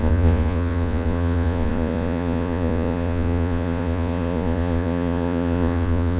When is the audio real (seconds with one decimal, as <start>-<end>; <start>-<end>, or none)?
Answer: none